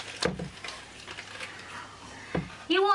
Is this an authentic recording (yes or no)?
yes